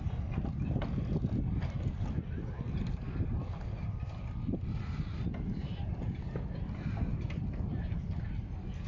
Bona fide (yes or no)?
yes